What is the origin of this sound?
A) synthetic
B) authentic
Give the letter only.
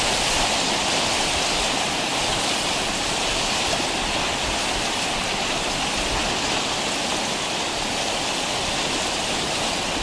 B